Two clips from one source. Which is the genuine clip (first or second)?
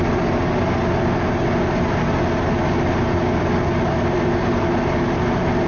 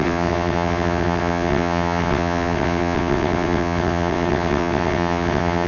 first